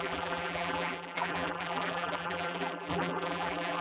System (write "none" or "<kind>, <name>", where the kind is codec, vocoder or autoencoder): vocoder, BigVGAN v2